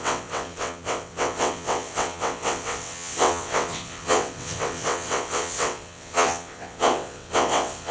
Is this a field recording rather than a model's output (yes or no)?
no